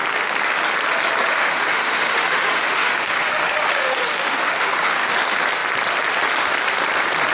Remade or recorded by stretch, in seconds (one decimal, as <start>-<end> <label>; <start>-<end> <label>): 0.0-1.3 recorded; 1.3-5.1 remade; 5.1-7.3 recorded